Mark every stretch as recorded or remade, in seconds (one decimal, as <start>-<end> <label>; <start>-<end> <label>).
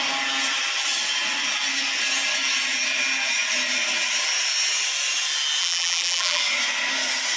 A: 0.0-5.6 recorded; 5.6-6.4 remade; 6.4-7.4 recorded